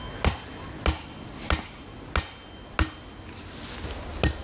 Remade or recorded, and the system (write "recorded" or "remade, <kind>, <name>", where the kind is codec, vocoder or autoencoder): recorded